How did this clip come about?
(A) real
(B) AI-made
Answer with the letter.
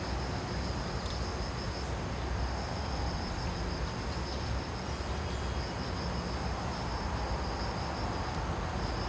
A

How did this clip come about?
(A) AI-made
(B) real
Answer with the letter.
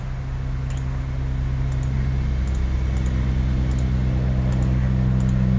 B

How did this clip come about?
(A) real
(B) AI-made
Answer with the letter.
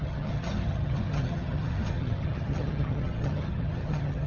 B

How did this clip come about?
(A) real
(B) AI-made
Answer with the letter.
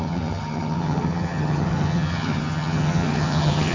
B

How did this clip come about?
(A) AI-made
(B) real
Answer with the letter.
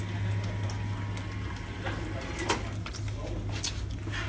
B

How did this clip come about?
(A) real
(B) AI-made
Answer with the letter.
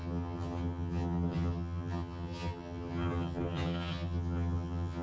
B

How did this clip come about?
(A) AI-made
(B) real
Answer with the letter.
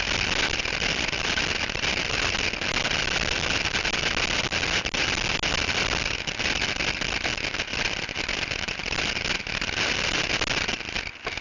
B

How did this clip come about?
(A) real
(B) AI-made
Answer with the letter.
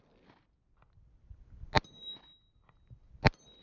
A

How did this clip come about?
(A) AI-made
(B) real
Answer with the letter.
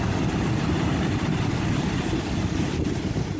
B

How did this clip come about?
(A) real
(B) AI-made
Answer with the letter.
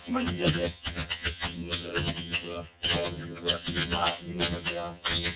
B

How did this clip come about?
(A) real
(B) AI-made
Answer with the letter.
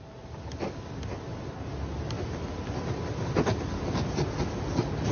A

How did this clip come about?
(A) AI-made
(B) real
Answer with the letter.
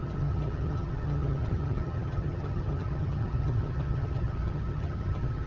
A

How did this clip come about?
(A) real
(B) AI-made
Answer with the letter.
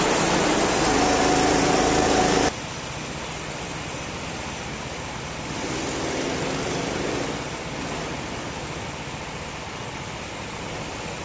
A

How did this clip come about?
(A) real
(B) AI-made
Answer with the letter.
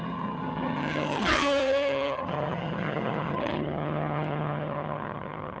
B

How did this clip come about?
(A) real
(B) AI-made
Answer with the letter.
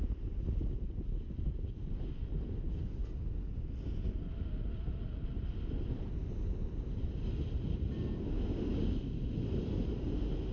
A